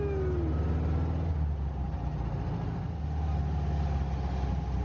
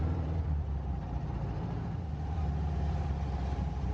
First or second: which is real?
first